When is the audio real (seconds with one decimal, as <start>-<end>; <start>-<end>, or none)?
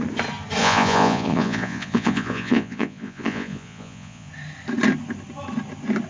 0.0-0.6; 4.3-6.1